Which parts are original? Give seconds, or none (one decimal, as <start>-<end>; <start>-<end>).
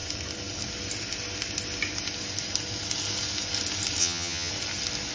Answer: 0.0-4.0; 4.5-5.1